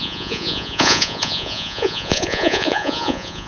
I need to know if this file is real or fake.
fake